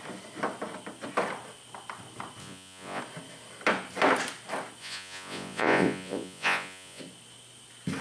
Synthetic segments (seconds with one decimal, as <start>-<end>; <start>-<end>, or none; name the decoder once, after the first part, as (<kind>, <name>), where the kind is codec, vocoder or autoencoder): 2.4-3.0 (vocoder, Vocos); 4.8-7.0